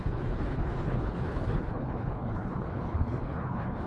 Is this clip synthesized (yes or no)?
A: yes